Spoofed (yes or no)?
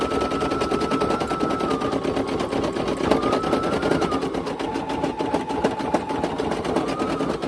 no